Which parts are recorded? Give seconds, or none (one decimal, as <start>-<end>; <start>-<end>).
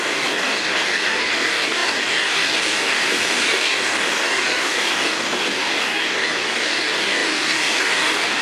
none